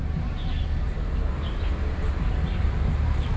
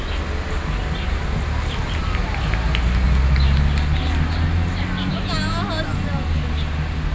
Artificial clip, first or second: first